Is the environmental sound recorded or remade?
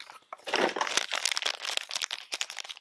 recorded